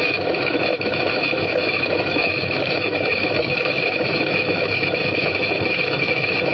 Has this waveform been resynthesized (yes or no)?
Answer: yes